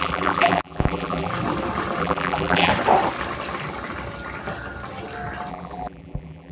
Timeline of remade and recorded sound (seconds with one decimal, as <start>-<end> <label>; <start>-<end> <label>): 0.0-1.3 remade; 1.3-2.0 recorded; 2.0-2.7 remade; 2.7-5.5 recorded; 5.5-6.5 remade